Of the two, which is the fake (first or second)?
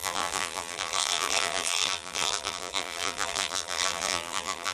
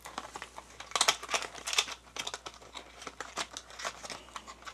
first